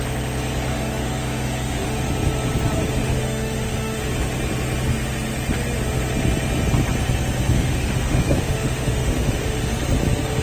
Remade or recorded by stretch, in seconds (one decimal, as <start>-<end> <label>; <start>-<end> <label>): 0.0-0.7 recorded; 0.7-2.0 remade; 2.0-3.0 recorded; 3.0-4.0 remade; 4.0-7.5 recorded; 7.5-9.7 remade; 9.7-10.4 recorded